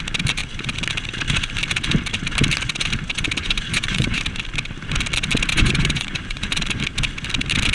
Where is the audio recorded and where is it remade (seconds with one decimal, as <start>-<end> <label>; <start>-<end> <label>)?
0.0-3.4 recorded; 3.4-4.2 remade; 4.2-5.5 recorded; 5.5-6.8 remade; 6.8-7.7 recorded